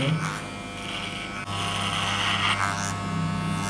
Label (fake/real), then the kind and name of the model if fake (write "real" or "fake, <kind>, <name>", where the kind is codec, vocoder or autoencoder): real